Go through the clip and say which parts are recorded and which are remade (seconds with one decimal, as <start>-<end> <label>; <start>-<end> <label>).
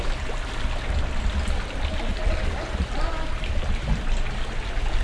0.0-2.1 recorded; 2.1-3.5 remade; 3.5-5.0 recorded